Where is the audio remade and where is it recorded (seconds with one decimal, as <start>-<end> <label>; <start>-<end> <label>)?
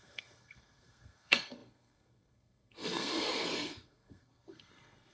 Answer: 0.0-5.1 remade